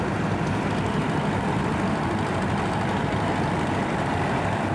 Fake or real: fake